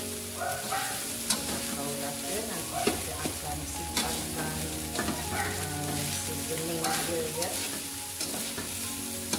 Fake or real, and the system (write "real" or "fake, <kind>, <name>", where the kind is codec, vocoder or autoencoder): real